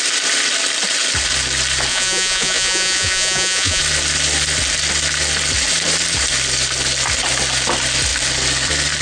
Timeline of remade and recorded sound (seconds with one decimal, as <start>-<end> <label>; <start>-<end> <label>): 0.0-1.9 recorded; 1.9-3.8 remade; 3.8-9.0 recorded